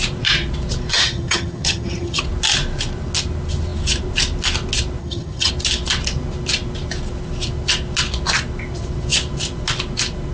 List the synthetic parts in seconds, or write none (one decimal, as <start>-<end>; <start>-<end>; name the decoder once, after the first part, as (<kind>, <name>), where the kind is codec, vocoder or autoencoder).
0.9-2.2 (vocoder, HiFi-GAN); 5.0-5.5